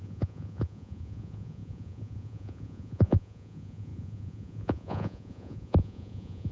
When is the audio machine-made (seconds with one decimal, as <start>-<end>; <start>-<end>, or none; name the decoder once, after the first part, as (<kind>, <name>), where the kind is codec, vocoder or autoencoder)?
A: 0.0-6.5 (vocoder, Vocos)